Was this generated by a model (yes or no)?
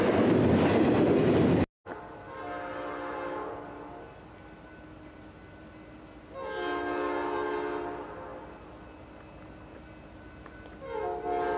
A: no